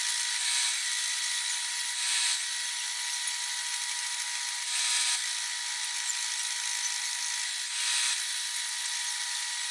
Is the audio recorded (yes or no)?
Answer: yes